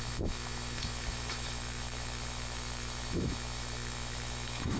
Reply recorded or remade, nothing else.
remade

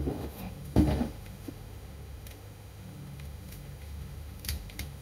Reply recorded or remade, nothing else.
remade